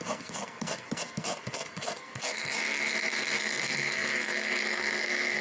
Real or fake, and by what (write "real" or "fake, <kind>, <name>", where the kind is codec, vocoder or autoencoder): fake, codec, SNAC